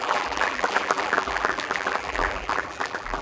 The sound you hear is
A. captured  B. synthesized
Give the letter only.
B